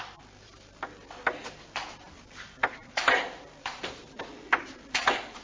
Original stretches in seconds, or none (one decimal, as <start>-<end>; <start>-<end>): 0.0-5.4